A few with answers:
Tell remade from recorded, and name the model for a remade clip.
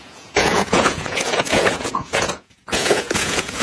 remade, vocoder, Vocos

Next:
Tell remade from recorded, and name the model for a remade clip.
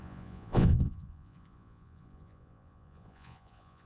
remade, vocoder, Vocos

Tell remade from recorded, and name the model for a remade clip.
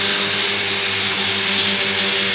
recorded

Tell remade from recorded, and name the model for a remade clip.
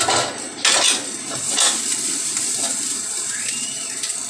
recorded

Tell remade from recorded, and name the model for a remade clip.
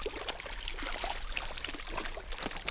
recorded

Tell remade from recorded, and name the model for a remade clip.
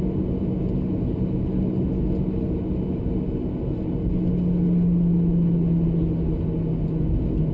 recorded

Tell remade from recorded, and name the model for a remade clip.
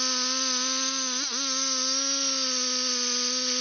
recorded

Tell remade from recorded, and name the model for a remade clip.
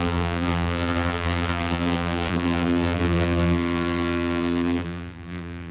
remade, vocoder, BigVGAN v2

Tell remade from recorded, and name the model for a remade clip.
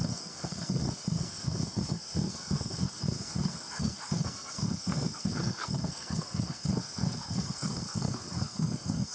remade, codec, SNAC